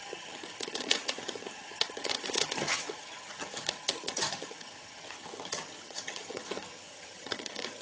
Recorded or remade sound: remade